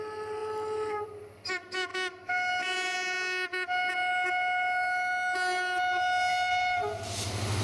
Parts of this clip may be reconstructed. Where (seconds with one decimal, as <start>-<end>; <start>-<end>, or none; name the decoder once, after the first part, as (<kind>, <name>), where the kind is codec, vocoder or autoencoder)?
0.4-1.1 (vocoder, BigVGAN v2)